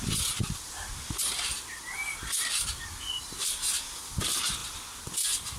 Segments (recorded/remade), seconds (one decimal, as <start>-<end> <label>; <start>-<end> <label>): 0.0-5.6 recorded